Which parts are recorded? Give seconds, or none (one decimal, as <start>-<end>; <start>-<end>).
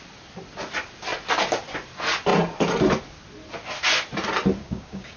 0.0-4.6